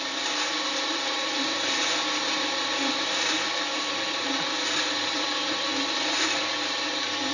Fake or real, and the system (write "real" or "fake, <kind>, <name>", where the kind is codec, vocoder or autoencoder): fake, vocoder, BigVGAN v2